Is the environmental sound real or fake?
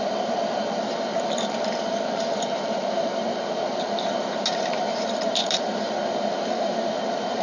fake